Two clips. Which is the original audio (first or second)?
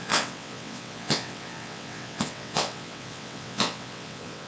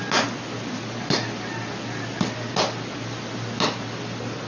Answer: second